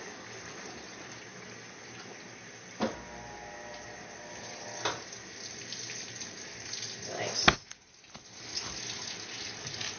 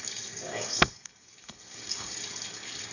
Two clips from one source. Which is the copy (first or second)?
second